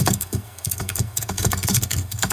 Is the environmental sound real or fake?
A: fake